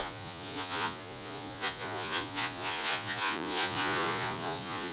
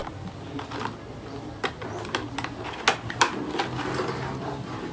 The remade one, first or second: first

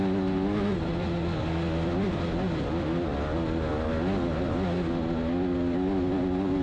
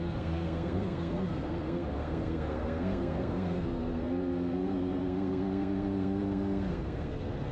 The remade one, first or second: second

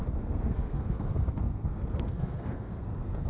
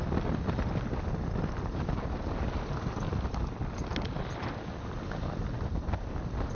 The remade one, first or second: first